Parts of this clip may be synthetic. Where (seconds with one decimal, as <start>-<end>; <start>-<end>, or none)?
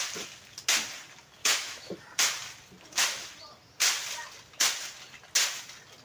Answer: 1.4-1.9